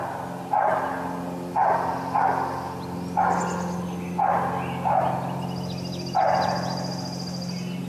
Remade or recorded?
recorded